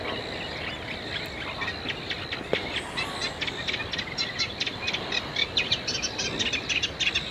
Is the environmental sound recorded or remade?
recorded